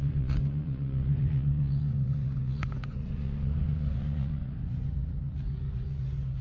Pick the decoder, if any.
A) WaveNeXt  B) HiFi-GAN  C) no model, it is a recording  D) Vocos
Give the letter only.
D